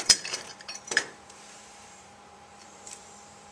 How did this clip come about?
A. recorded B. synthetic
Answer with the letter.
B